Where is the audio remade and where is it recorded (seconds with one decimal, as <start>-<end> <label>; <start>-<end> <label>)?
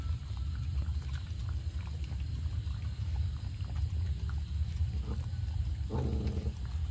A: 0.0-6.9 recorded